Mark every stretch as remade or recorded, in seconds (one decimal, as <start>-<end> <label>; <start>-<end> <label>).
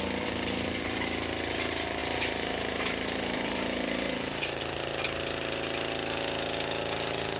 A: 0.0-2.0 recorded; 2.0-4.6 remade; 4.6-7.4 recorded